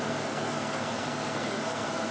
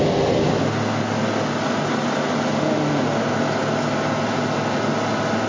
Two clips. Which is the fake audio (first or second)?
first